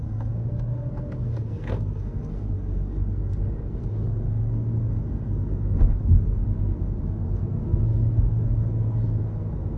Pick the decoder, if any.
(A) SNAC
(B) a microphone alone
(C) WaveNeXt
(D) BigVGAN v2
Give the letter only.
A